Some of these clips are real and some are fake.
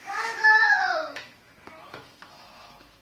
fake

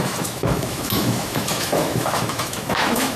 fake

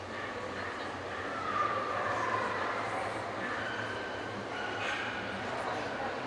real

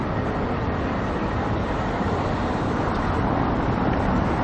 real